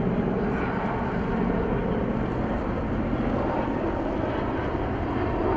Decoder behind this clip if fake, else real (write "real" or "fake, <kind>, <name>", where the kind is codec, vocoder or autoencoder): real